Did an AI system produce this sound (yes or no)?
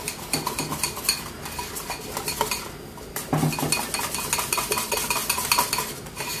no